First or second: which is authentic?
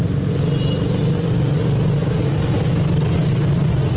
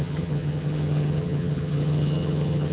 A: first